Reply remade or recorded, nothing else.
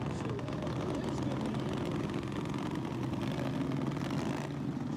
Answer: recorded